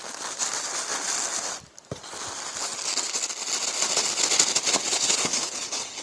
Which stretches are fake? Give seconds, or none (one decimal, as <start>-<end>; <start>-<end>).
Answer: 4.9-6.0